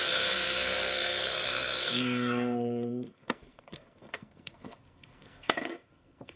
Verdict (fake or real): fake